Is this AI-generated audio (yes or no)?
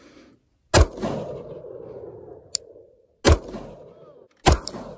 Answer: no